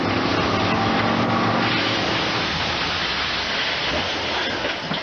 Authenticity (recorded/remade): recorded